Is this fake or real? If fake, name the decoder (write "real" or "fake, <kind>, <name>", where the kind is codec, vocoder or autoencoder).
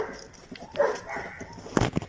real